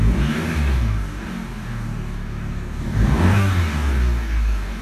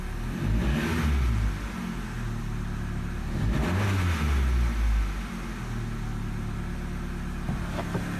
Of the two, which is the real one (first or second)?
second